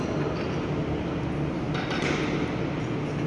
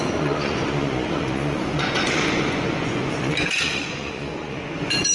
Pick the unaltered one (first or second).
first